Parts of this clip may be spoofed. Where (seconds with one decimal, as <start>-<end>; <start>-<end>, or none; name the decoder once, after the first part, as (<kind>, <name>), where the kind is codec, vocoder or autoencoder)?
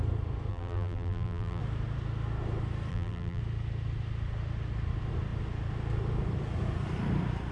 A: 0.5-1.6 (vocoder, BigVGAN v2); 2.9-3.4